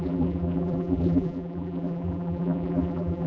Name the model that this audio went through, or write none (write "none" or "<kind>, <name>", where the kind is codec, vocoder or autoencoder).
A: vocoder, BigVGAN v2